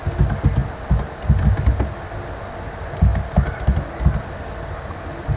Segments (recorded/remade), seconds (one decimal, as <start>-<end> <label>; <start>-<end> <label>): 0.0-5.4 recorded